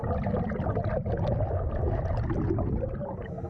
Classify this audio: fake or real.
real